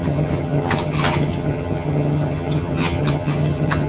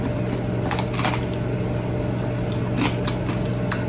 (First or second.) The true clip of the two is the second